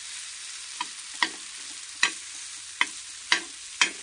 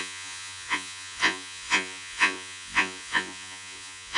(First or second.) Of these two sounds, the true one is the first